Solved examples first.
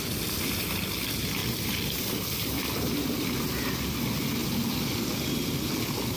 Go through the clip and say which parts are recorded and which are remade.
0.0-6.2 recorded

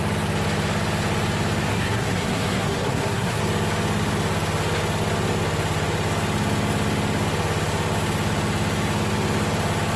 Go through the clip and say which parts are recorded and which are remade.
0.0-1.7 recorded; 1.7-3.4 remade; 3.4-10.0 recorded